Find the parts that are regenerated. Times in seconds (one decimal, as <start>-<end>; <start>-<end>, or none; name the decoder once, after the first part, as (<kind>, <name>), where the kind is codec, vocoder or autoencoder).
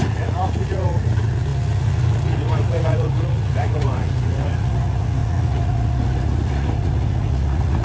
0.0-7.8 (vocoder, Vocos)